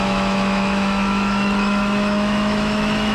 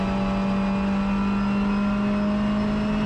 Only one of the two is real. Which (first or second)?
second